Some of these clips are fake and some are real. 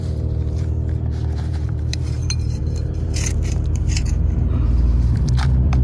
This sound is fake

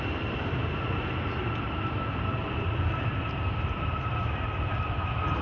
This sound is real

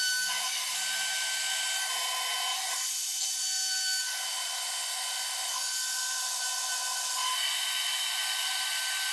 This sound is real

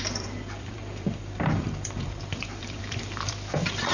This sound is fake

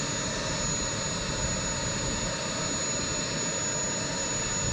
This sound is real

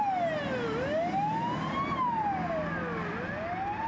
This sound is real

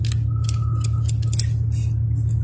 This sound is real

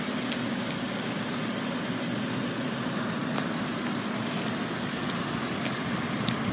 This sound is real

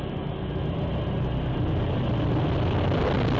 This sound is real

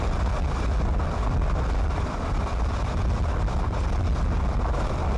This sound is fake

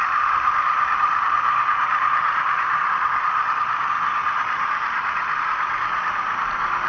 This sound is real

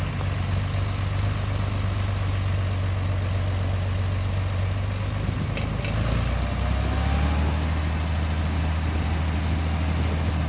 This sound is real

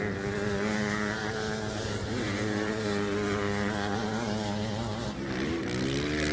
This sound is real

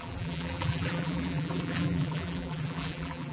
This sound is fake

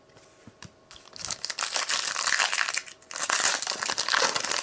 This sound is real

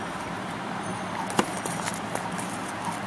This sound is real